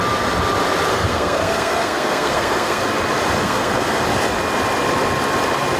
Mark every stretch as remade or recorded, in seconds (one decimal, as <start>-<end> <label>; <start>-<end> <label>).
0.0-0.9 recorded; 0.9-2.8 remade; 2.8-3.4 recorded; 3.4-4.0 remade; 4.0-5.8 recorded